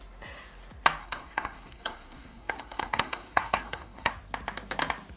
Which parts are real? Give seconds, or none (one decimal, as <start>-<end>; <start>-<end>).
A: 0.0-1.0; 4.1-5.2